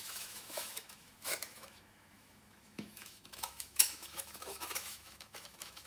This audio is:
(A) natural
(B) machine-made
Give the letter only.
B